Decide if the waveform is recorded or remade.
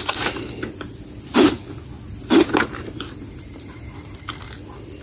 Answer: recorded